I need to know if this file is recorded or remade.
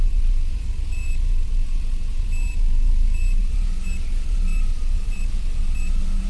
remade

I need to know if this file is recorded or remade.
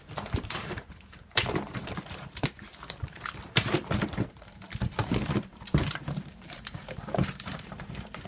remade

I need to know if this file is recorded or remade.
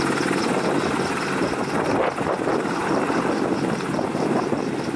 recorded